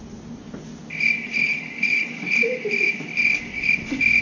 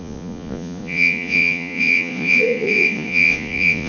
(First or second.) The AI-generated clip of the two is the second